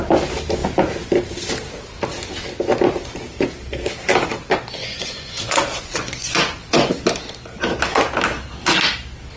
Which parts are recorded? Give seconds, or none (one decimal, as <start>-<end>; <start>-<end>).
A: 0.0-4.8; 6.9-9.4

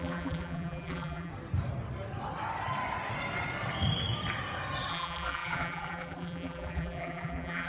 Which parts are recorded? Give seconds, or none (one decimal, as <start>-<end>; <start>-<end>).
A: 1.3-4.9

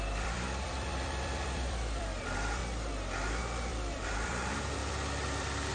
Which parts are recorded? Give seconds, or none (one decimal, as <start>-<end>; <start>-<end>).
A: 2.6-3.4

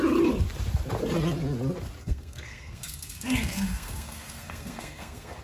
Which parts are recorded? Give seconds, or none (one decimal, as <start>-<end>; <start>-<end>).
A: 0.0-2.0

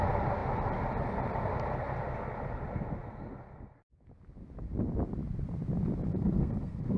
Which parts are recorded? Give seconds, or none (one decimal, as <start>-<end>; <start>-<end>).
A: 0.0-6.1

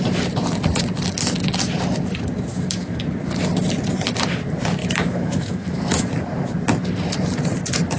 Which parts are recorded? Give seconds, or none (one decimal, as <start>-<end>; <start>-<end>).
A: 0.0-2.5; 3.0-4.8; 6.1-8.0

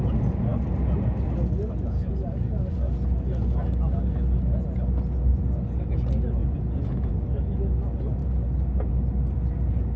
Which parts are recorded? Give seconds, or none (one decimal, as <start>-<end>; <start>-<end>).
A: 0.0-6.4; 7.1-10.0